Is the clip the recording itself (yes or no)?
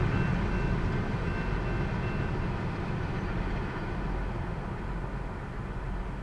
yes